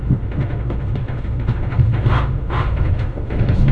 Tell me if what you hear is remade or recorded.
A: remade